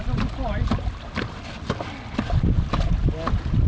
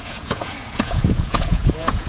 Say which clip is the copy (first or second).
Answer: second